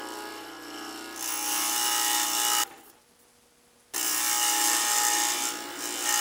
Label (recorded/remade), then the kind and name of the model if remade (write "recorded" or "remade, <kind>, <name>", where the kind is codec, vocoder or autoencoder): recorded